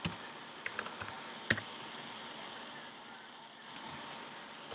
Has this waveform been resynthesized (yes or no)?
no